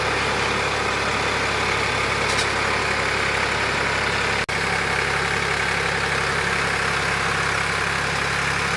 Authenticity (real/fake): real